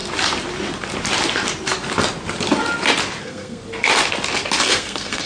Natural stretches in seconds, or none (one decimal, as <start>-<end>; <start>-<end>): 0.0-3.2; 3.6-4.6